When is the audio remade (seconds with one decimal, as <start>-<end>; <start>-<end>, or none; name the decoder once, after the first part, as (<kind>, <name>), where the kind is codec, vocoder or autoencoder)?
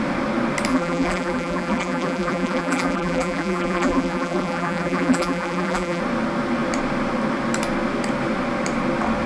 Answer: 0.7-6.0 (vocoder, BigVGAN v2)